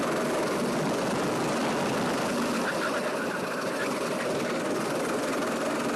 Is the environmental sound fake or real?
real